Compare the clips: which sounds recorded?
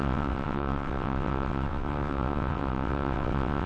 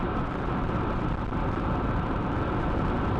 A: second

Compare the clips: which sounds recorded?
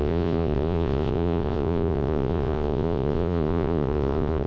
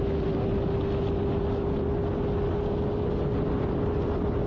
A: second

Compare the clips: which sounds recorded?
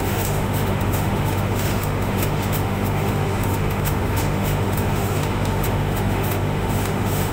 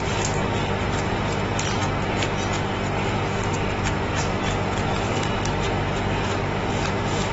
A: second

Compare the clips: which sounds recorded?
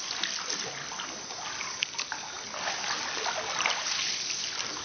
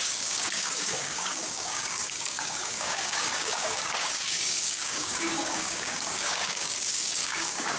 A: first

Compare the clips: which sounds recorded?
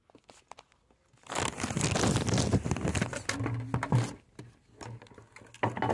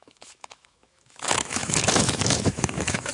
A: first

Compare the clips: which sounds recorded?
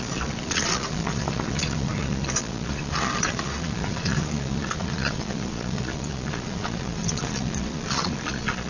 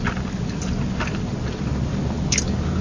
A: second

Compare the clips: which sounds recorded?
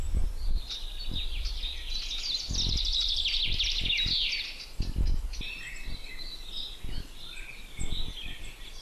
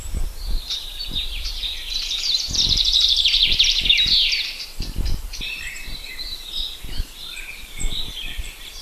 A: first